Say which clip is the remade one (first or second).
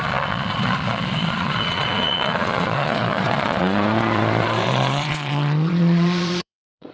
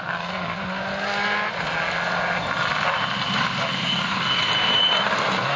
first